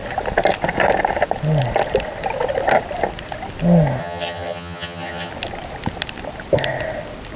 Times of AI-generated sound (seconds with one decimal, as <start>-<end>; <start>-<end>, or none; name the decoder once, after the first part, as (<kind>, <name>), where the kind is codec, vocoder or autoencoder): 4.0-5.3 (vocoder, HiFi-GAN)